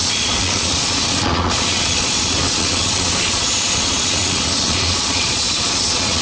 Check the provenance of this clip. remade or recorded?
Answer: remade